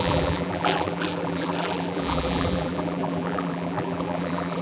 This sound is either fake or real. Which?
fake